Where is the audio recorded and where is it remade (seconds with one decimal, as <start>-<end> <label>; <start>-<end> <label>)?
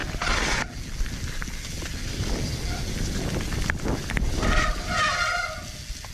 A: 0.0-6.1 recorded